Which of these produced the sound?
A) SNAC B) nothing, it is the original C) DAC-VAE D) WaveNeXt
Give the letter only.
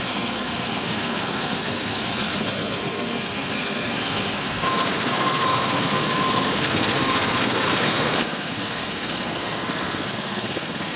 A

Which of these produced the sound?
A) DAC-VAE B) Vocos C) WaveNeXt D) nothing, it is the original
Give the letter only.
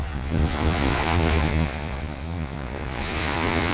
B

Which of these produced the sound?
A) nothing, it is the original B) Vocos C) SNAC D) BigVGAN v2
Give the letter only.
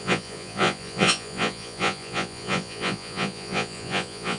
B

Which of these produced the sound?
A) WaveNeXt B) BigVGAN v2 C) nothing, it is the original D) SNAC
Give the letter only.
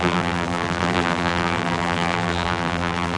B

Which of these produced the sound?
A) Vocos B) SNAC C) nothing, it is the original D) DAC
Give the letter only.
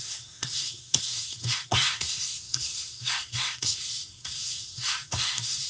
B